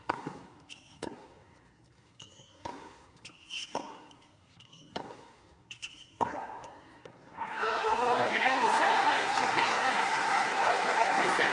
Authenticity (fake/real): fake